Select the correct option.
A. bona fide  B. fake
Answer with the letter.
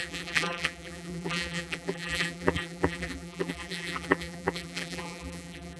B